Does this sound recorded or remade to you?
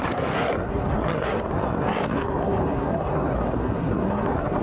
remade